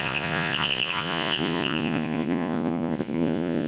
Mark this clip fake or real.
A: fake